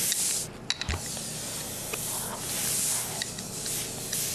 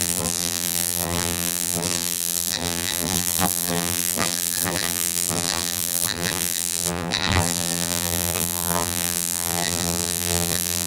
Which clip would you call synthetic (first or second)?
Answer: second